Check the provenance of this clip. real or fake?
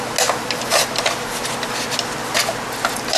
real